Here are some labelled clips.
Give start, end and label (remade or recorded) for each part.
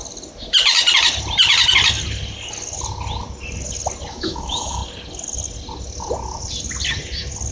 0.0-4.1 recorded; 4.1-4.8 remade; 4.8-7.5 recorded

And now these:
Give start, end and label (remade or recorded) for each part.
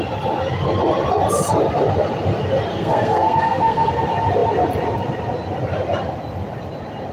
0.0-2.7 recorded; 2.7-3.9 remade; 3.9-7.1 recorded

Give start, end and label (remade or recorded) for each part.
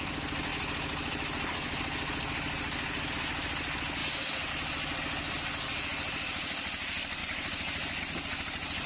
0.0-8.9 recorded